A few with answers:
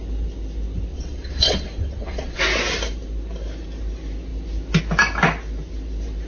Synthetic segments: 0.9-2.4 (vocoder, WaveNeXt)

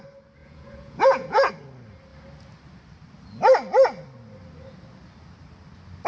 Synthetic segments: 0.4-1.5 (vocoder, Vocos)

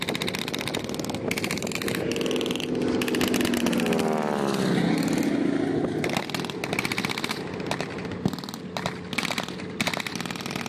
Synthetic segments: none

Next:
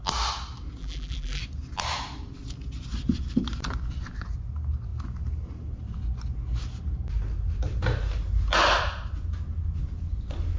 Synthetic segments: 0.8-1.4 (vocoder, BigVGAN v2)

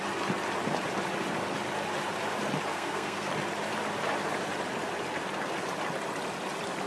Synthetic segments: 2.7-3.3 (codec, SNAC)

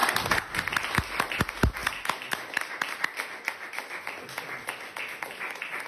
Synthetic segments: none

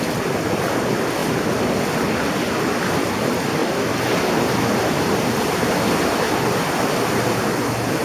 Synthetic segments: none